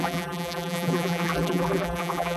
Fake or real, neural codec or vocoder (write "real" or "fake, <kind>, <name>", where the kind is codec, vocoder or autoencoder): fake, vocoder, BigVGAN v2